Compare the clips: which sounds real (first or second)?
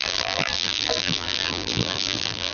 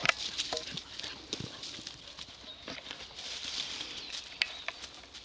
second